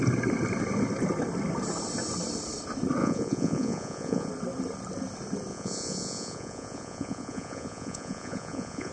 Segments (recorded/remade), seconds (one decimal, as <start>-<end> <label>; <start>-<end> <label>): 0.0-3.0 recorded; 3.0-4.3 remade; 4.3-5.5 recorded; 5.5-8.9 remade